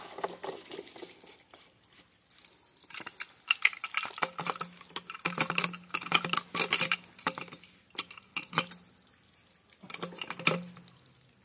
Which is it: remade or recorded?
recorded